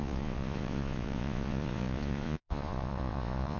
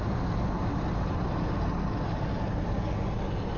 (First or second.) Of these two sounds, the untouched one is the second